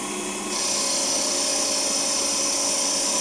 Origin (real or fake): real